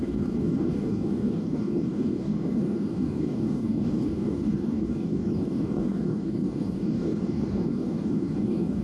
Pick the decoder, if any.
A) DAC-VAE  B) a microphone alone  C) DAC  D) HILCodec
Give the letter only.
C